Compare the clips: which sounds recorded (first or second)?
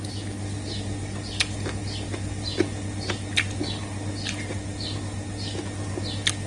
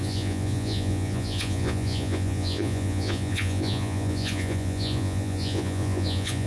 first